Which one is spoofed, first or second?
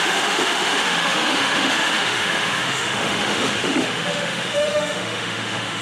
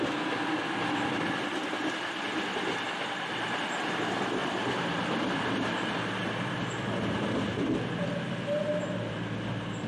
first